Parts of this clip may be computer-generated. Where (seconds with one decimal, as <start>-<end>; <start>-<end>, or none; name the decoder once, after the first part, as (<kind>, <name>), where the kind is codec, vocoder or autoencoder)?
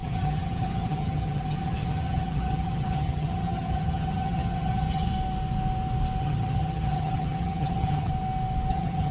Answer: 0.0-5.1 (vocoder, HiFi-GAN); 6.2-8.1; 8.7-9.1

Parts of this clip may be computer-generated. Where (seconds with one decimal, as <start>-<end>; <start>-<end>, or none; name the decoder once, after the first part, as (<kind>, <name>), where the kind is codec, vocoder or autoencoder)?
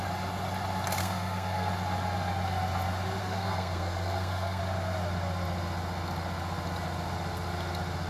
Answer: 1.0-1.7 (codec, SNAC); 3.2-4.6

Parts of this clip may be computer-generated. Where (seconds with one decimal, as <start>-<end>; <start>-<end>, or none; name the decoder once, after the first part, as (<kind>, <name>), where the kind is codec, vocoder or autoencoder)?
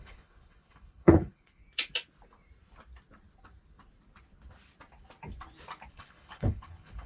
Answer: 0.0-1.6 (codec, HILCodec); 5.9-7.1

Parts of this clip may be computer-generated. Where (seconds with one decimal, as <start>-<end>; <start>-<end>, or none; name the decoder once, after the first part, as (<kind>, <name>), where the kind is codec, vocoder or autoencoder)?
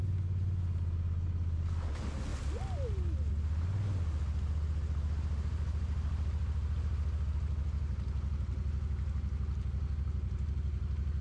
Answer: none